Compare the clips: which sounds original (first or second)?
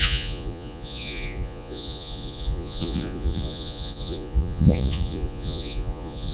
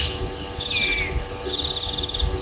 second